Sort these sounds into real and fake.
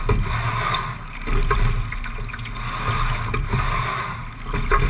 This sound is real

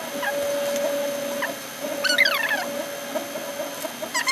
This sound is real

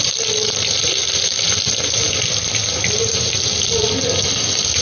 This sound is real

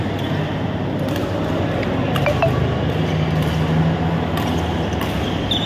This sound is real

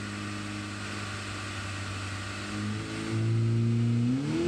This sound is real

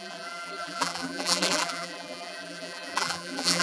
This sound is fake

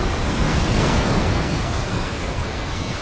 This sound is fake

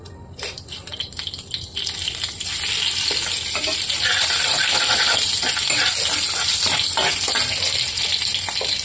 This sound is real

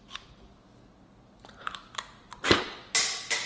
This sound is real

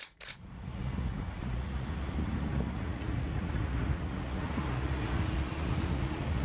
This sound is fake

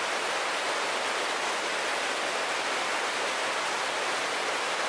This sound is real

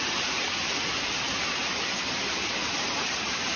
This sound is real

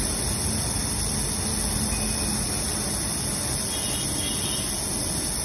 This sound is real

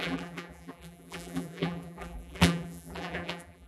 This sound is fake